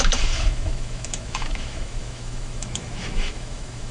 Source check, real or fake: fake